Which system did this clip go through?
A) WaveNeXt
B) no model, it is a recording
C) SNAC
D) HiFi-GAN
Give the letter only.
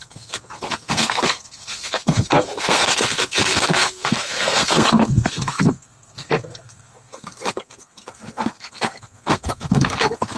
C